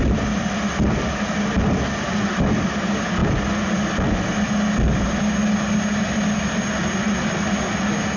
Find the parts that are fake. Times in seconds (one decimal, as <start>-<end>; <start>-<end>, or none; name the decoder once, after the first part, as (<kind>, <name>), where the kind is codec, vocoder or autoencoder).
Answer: none